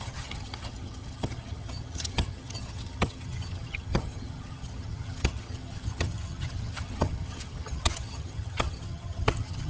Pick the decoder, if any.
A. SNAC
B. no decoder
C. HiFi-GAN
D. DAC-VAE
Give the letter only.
C